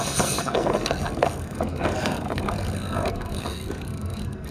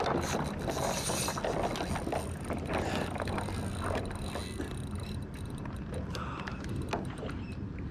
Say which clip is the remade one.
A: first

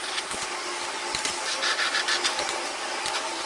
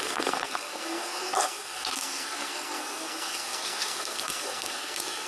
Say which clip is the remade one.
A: second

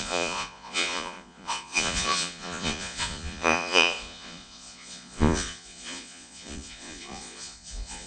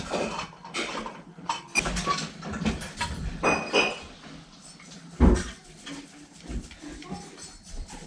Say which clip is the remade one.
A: first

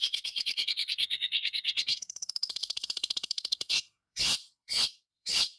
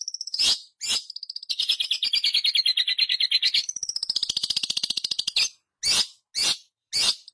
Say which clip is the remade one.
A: first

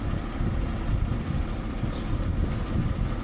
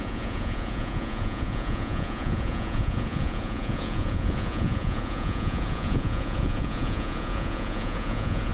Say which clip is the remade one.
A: second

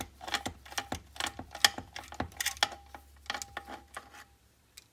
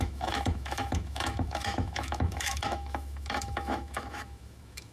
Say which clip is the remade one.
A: second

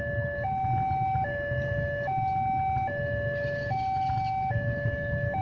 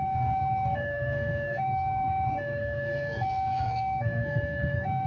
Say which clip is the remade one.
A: second